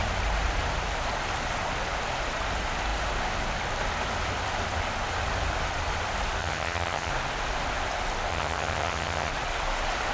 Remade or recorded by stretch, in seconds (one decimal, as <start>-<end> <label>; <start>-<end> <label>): 0.0-6.4 recorded; 6.4-7.1 remade; 7.1-8.3 recorded; 8.3-9.3 remade; 9.3-10.1 recorded